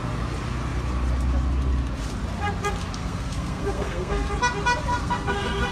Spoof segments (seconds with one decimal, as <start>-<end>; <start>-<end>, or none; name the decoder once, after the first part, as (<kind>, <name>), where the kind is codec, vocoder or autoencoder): 3.0-4.3 (codec, SNAC); 4.9-5.7